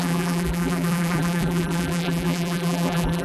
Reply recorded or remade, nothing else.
remade